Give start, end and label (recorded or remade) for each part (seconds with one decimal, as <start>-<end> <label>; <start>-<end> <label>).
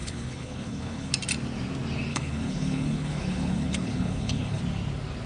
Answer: 0.0-1.1 remade; 1.1-2.1 recorded; 2.1-4.6 remade; 4.6-5.3 recorded